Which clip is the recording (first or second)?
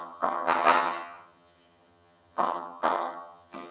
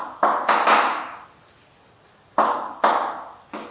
second